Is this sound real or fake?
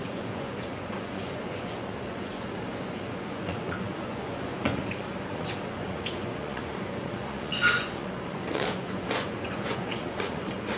fake